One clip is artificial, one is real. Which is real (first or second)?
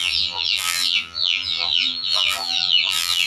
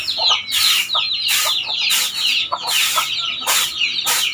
second